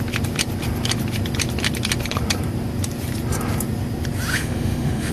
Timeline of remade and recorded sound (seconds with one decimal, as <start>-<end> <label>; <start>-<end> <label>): 0.0-4.3 recorded; 4.3-5.1 remade